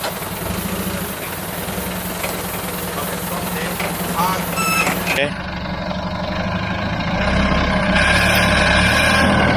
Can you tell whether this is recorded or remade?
recorded